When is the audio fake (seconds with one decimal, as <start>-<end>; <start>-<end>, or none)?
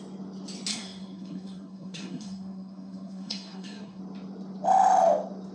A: 0.7-4.0